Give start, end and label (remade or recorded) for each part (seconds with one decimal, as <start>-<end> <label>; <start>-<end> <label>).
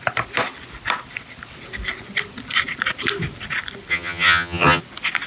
0.0-3.9 recorded; 3.9-4.8 remade; 4.8-5.3 recorded